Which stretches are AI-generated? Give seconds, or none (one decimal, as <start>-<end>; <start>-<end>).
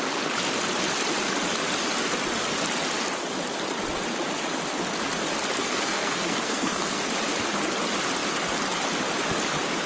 5.6-7.1